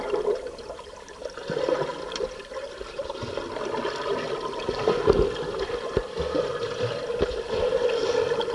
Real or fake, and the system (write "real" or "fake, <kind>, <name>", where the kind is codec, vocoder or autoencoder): real